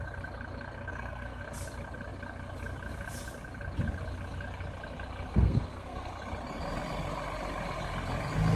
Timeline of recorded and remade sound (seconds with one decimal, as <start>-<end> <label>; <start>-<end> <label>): 0.0-0.9 recorded; 0.9-1.4 remade; 1.4-5.3 recorded; 5.3-6.1 remade; 6.1-8.6 recorded